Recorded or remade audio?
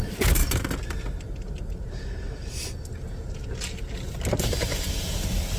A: recorded